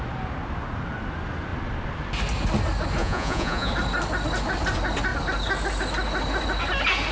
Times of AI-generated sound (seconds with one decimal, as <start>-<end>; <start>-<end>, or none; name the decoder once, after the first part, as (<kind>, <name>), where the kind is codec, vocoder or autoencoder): 3.0-3.7 (vocoder, Vocos)